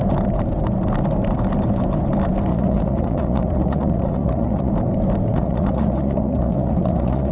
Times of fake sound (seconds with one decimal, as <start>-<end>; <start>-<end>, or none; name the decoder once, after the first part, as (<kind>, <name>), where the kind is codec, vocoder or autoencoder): 2.5-4.7 (vocoder, Vocos); 5.3-7.3